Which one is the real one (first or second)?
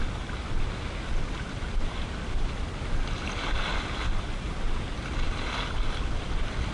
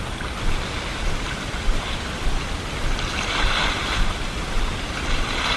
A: first